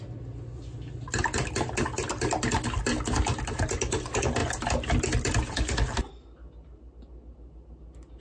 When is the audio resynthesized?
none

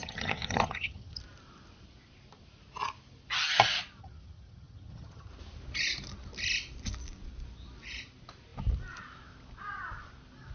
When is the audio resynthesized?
0.0-1.2; 4.0-5.3